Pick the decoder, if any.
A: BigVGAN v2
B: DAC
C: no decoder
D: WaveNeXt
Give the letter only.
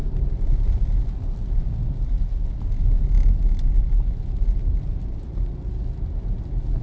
C